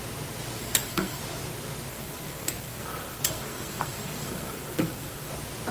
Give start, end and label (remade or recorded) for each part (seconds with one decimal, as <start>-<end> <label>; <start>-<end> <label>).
0.0-0.6 recorded; 0.6-1.2 remade; 1.2-1.9 recorded; 1.9-5.3 remade; 5.3-5.7 recorded